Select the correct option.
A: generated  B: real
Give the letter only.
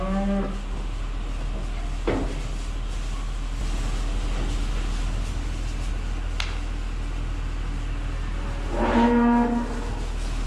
B